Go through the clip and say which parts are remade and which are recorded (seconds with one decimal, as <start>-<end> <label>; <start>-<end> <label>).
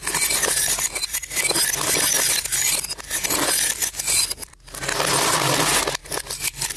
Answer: 0.0-6.0 recorded; 6.0-6.8 remade